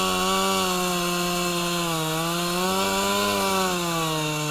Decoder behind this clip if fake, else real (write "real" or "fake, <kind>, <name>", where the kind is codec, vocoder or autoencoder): real